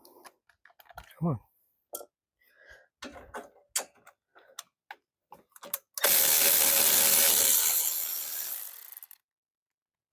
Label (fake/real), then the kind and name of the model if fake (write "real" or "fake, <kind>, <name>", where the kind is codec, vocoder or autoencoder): real